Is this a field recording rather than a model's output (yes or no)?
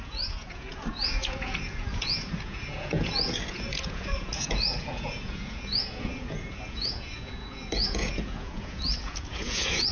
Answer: no